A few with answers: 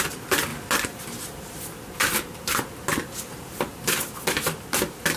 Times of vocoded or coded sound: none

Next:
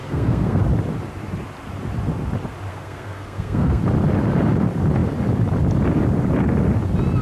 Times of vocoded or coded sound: 0.0-0.6 (codec, SNAC); 2.7-3.8

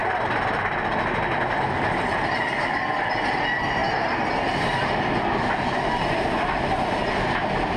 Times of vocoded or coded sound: none

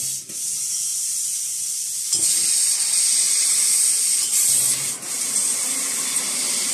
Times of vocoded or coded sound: none

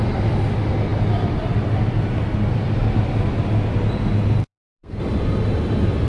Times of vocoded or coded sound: 4.4-5.0 (codec, SNAC)

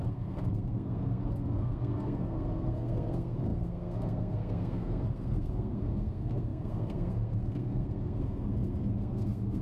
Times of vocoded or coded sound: 0.0-9.6 (codec, SNAC)